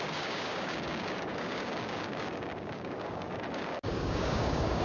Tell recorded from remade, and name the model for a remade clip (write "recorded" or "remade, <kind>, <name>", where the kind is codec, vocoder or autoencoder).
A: remade, codec, DAC